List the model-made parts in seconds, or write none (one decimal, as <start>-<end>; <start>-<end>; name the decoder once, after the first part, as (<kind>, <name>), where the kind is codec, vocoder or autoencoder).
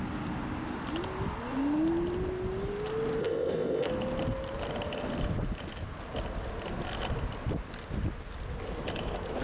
3.2-3.9 (codec, ZipCodec)